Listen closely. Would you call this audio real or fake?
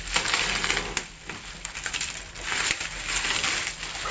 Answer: real